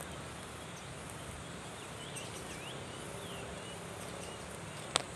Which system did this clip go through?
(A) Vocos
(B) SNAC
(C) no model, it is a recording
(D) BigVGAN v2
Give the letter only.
C